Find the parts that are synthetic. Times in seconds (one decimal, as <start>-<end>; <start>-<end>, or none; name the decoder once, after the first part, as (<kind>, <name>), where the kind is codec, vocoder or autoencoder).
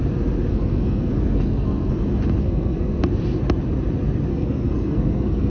0.5-1.9 (codec, SNAC); 2.4-3.0; 4.3-5.5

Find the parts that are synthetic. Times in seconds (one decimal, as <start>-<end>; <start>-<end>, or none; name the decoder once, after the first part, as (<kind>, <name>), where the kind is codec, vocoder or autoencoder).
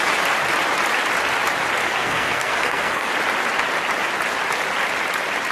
1.8-3.1 (codec, SNAC)